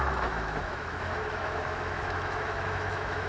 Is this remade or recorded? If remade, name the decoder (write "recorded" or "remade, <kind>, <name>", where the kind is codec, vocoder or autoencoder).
remade, autoencoder, DAC-VAE